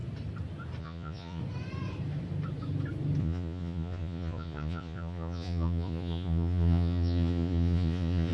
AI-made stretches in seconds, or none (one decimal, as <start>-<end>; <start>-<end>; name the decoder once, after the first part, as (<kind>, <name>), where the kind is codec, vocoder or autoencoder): 0.8-1.4 (vocoder, Vocos); 3.2-8.3